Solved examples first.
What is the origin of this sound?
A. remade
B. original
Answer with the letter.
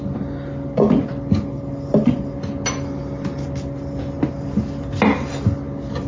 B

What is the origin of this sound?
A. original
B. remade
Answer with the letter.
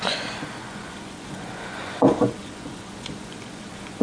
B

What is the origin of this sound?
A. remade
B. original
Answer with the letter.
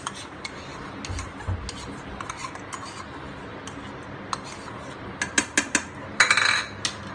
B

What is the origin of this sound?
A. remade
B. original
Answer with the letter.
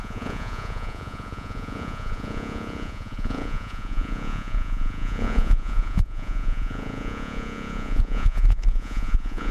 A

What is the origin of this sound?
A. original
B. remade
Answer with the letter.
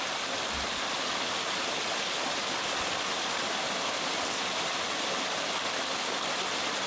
A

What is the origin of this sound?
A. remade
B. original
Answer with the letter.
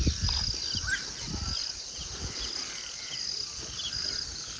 B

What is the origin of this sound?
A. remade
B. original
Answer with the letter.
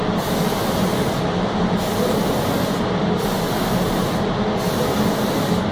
B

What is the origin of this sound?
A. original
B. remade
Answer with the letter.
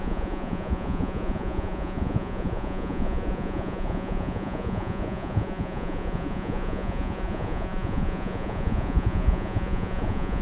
B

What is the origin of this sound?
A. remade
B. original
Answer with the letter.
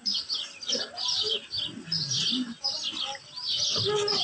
B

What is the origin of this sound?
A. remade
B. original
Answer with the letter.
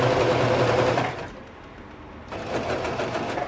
B